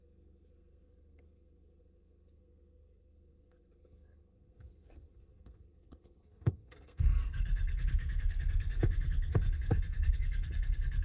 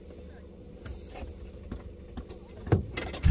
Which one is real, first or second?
second